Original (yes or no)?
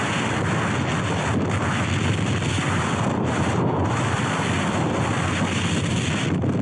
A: yes